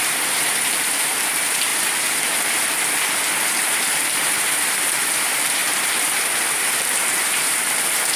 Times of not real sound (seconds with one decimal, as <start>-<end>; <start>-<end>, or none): 0.0-8.2